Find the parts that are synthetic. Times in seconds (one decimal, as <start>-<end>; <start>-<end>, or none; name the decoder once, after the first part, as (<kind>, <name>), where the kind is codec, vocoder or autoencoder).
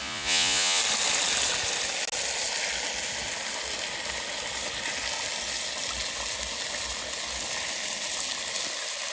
0.0-0.8 (vocoder, Vocos)